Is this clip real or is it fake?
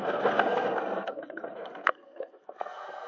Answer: fake